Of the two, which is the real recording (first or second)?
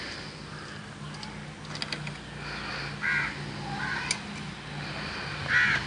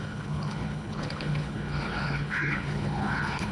first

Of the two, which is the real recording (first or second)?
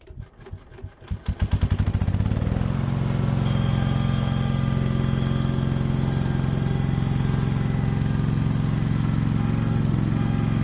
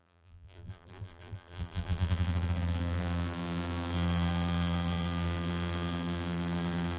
first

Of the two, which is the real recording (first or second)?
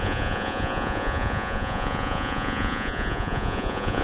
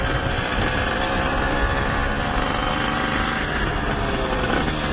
second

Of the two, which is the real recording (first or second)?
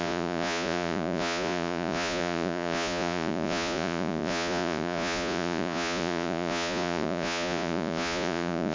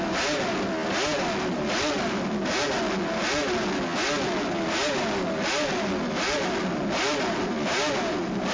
second